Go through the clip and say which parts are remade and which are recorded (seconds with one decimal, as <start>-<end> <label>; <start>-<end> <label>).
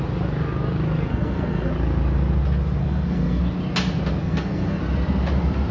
0.0-1.1 recorded; 1.1-1.7 remade; 1.7-2.8 recorded; 2.8-3.4 remade; 3.4-4.2 recorded; 4.2-4.8 remade; 4.8-5.7 recorded